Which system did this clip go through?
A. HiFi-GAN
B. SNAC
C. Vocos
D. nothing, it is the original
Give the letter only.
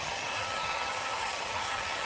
A